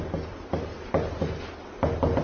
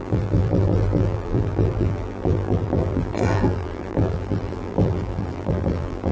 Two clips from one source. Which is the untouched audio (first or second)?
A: first